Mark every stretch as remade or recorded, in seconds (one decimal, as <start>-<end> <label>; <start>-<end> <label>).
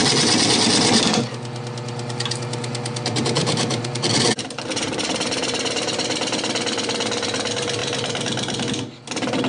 0.0-3.4 recorded; 3.4-4.5 remade; 4.5-9.5 recorded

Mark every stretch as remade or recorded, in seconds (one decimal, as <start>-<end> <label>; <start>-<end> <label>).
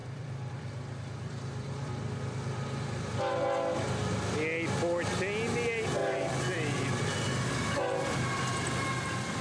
0.0-3.2 remade; 3.2-6.0 recorded; 6.0-7.5 remade; 7.5-9.4 recorded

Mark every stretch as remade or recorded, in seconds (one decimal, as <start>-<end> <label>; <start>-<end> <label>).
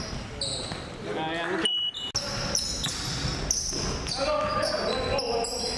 0.0-5.8 recorded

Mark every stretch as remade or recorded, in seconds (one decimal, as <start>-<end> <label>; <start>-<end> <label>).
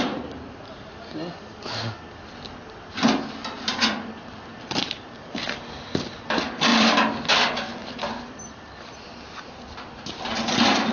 0.0-4.5 recorded; 4.5-5.3 remade; 5.3-6.7 recorded; 6.7-7.3 remade; 7.3-7.8 recorded; 7.8-9.1 remade; 9.1-10.9 recorded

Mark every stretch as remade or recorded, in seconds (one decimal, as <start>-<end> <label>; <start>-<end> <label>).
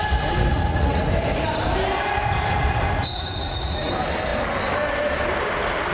0.0-0.5 recorded; 0.5-1.0 remade; 1.0-3.1 recorded; 3.1-3.9 remade; 3.9-5.9 recorded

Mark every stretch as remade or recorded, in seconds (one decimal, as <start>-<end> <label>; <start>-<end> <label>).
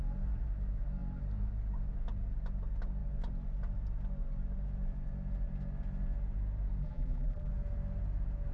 0.0-6.8 recorded; 6.8-7.5 remade; 7.5-8.5 recorded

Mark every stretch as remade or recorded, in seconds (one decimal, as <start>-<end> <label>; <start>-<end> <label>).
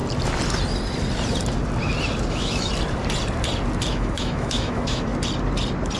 0.0-2.3 recorded; 2.3-2.7 remade; 2.7-3.9 recorded; 3.9-5.1 remade; 5.1-6.0 recorded